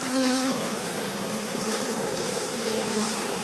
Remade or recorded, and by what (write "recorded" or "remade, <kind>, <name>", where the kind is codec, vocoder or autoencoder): remade, codec, SNAC